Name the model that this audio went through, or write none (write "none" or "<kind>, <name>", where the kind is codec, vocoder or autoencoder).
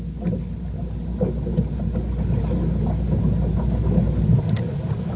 none